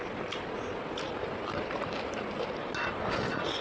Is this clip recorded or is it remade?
recorded